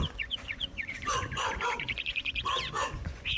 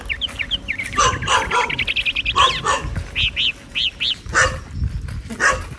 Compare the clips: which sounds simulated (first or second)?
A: first